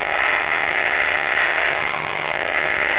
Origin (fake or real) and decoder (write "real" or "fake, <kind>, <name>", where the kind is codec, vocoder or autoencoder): fake, vocoder, HiFi-GAN